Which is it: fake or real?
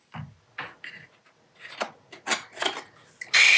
real